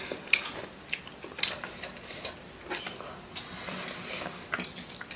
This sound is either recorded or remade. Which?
recorded